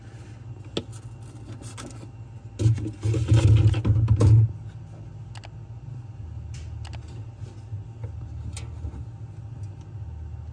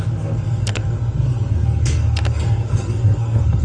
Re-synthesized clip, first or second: second